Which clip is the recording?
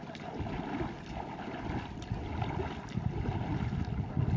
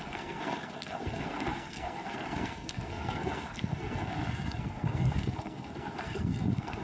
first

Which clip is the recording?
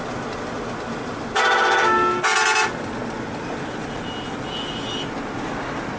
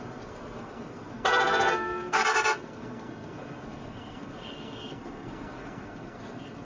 first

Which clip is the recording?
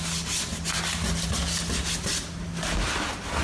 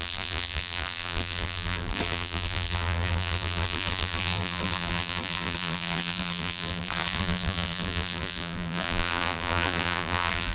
first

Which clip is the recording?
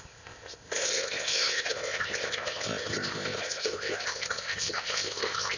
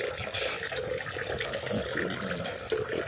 second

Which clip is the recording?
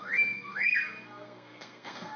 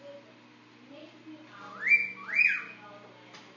second